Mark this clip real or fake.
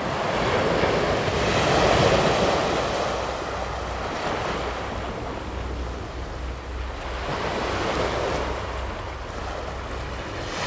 real